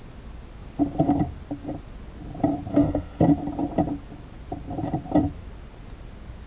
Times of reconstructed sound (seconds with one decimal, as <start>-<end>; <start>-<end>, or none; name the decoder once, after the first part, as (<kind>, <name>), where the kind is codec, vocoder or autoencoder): 2.7-3.2 (codec, SNAC)